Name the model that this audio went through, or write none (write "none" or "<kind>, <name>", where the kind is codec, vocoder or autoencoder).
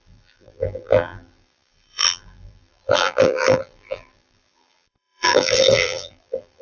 vocoder, BigVGAN v2